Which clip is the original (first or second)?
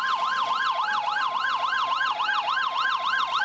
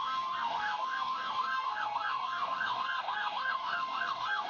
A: first